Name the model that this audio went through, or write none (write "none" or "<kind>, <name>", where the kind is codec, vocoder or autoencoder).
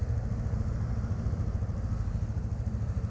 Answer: none